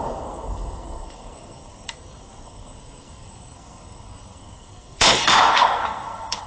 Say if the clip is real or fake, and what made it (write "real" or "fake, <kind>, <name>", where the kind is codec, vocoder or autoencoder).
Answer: fake, codec, SNAC